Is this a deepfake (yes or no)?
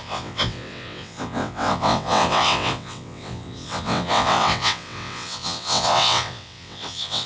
yes